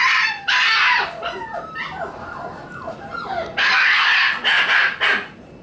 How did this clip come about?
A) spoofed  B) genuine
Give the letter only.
B